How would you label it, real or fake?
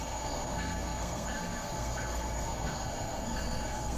fake